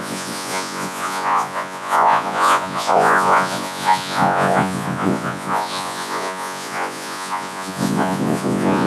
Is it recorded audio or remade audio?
remade